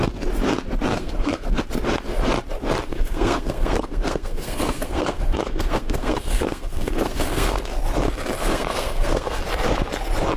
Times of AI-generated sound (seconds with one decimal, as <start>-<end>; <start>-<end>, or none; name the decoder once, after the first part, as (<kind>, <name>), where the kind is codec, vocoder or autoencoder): 0.9-1.6 (codec, SNAC); 2.9-7.8; 8.4-9.4